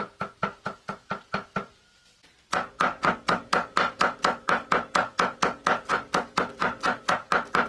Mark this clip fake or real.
real